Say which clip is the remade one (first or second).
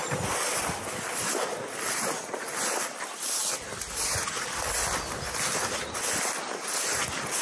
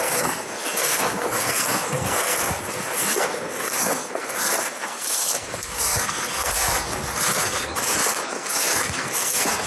second